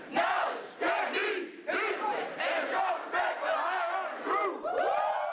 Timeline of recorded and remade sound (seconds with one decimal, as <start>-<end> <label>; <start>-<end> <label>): 0.0-1.2 recorded; 1.2-2.8 remade; 2.8-5.3 recorded